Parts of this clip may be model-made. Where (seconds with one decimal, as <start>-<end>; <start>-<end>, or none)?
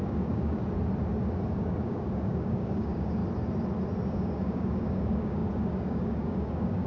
0.0-0.6; 1.5-3.2; 4.1-6.9